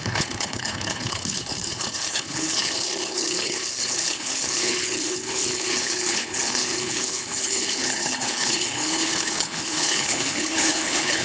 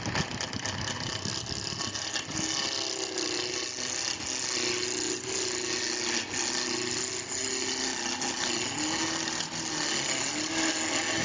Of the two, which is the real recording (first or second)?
second